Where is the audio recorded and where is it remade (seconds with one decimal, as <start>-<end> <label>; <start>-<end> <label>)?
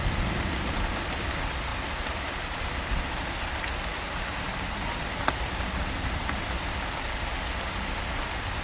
0.0-8.6 recorded